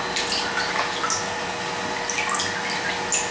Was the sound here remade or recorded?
recorded